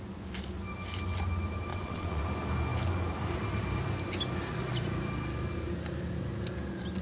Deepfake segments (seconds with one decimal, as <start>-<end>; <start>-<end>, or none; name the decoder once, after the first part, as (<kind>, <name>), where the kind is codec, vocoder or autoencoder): 1.7-2.2 (vocoder, WaveNeXt)